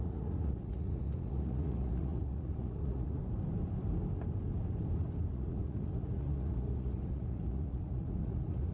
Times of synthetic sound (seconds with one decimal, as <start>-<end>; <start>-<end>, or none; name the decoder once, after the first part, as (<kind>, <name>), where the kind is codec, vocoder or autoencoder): 0.0-3.2 (vocoder, Vocos); 5.3-8.7